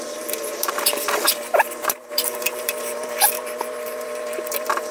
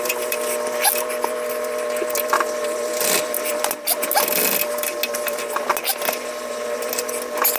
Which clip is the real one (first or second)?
second